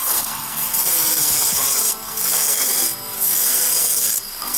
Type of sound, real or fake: fake